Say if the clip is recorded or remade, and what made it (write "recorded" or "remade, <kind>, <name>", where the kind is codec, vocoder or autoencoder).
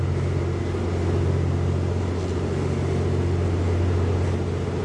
recorded